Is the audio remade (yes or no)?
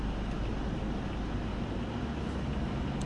no